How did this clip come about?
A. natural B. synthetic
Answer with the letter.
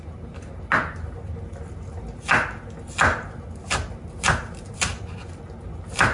A